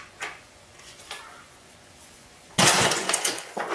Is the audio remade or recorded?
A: remade